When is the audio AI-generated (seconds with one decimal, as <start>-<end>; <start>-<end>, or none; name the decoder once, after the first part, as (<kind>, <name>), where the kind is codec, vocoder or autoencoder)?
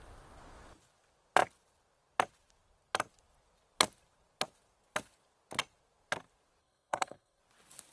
6.6-7.4 (codec, SNAC)